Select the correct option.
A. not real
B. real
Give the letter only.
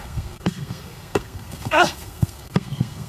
A